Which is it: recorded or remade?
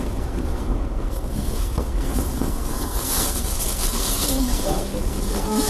remade